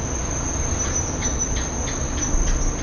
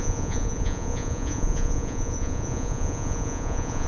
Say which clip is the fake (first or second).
second